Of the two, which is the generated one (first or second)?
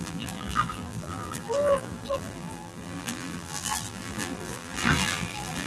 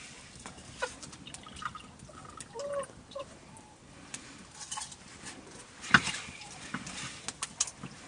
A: first